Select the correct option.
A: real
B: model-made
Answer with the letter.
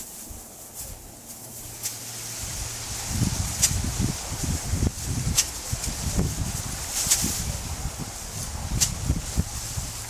A